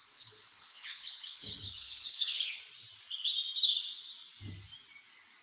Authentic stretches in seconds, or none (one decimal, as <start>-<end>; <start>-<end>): 2.6-5.4